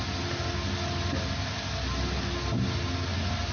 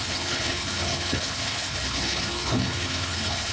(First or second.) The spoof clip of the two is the second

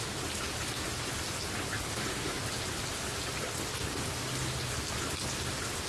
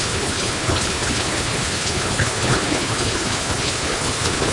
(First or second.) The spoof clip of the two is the second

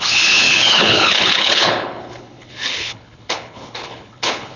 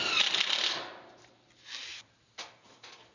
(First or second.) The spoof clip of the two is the first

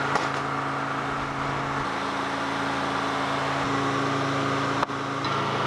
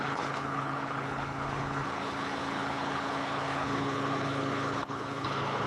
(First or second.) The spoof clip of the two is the second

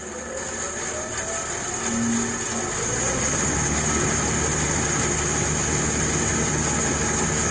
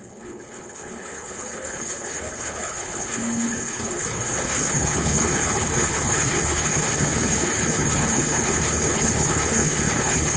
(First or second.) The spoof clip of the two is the second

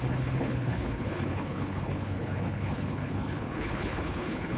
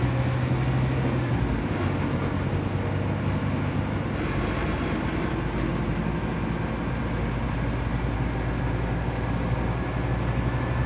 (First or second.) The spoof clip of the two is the first